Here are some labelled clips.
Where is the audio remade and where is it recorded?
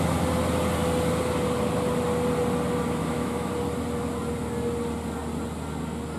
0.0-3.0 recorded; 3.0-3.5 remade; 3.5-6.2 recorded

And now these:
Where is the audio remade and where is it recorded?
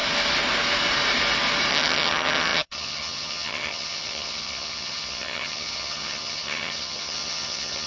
0.0-1.7 recorded; 1.7-7.9 remade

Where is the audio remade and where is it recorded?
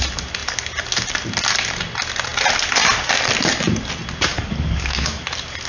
0.0-4.3 recorded; 4.3-5.2 remade; 5.2-5.7 recorded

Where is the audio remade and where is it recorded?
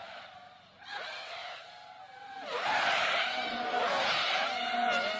0.0-5.2 recorded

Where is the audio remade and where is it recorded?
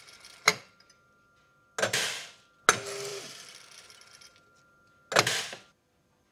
0.0-3.1 recorded; 3.1-3.8 remade; 3.8-6.3 recorded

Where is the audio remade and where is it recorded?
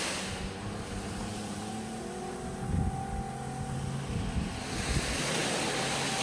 0.0-6.2 recorded